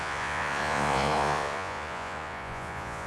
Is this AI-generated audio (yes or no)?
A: yes